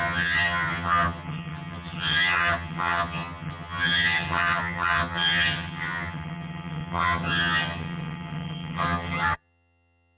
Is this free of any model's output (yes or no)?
no